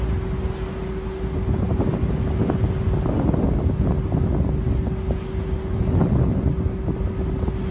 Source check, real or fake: real